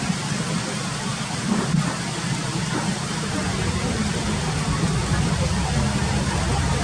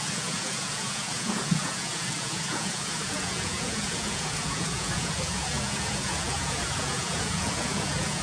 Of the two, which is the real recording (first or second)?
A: first